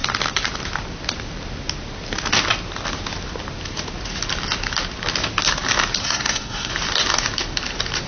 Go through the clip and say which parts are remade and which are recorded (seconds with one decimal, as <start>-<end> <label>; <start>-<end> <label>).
0.0-6.0 recorded; 6.0-6.7 remade; 6.7-8.1 recorded